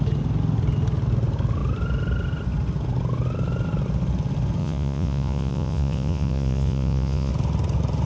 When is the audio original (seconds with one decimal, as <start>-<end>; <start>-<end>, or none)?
0.0-4.6; 7.3-8.1